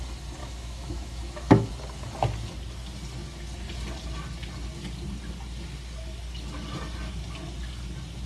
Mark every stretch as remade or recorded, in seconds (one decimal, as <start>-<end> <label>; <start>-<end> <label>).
0.0-0.4 recorded; 0.4-1.7 remade; 1.7-8.3 recorded